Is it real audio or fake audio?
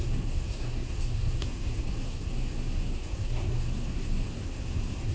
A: fake